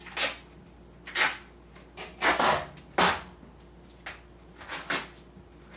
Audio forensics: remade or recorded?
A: recorded